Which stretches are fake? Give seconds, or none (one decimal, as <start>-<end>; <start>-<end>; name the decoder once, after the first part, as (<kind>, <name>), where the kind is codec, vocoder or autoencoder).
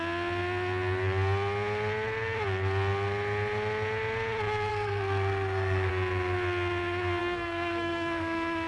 4.7-5.9 (codec, SNAC); 7.2-8.7